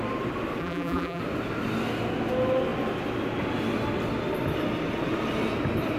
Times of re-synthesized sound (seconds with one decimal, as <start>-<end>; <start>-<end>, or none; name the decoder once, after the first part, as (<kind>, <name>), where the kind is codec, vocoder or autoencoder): 0.6-1.2 (vocoder, BigVGAN v2)